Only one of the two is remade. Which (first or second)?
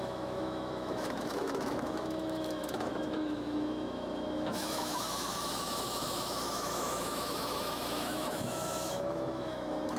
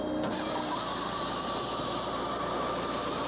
first